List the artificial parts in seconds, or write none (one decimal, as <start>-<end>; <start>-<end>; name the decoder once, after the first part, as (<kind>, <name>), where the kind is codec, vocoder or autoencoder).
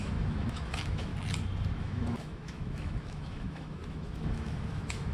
0.0-1.1 (autoencoder, DAC-VAE); 1.8-5.1